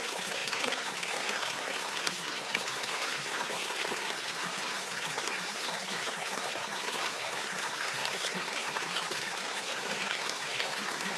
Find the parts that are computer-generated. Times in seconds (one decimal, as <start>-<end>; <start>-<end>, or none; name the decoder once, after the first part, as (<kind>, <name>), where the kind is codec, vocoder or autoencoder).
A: 0.0-11.2 (codec, SNAC)